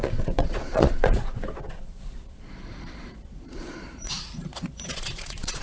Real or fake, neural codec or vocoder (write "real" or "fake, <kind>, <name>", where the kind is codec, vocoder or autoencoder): fake, vocoder, Vocos